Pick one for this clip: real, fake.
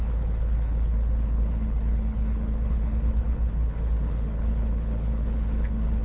fake